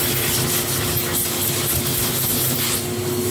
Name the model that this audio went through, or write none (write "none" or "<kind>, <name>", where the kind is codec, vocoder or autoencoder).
none